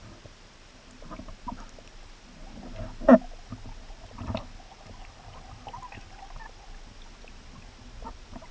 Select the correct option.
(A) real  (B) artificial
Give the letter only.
A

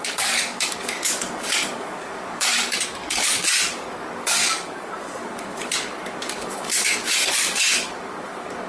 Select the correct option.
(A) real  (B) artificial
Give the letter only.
B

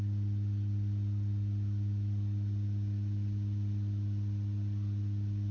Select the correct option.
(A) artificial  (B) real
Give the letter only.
B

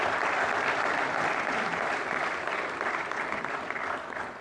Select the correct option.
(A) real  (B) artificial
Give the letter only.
A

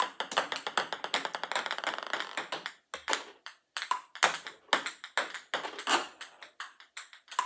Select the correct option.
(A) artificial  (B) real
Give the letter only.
B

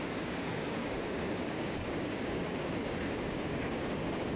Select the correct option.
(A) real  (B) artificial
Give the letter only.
B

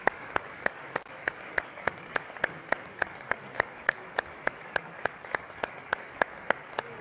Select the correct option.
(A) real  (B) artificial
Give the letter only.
B